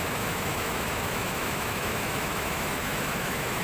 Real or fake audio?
fake